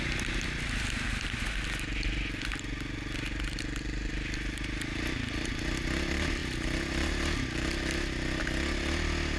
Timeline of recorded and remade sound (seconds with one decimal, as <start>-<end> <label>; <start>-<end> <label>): 0.0-9.4 recorded